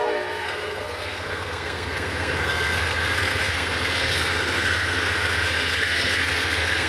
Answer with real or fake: fake